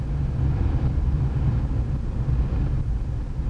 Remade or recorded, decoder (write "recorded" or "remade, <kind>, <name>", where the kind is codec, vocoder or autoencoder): recorded